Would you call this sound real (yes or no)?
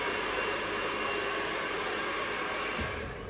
yes